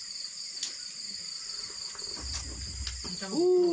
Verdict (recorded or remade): recorded